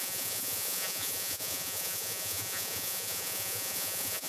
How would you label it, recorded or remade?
remade